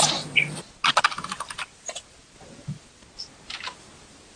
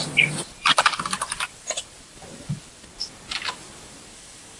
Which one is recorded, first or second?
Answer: first